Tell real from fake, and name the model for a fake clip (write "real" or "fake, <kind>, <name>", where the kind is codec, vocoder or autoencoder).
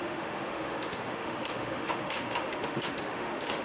fake, autoencoder, DAC-VAE